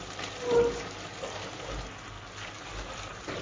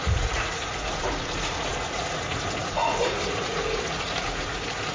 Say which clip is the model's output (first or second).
second